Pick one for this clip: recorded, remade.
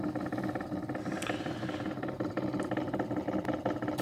recorded